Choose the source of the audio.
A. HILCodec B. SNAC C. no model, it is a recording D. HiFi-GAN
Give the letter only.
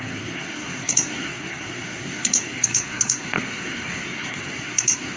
B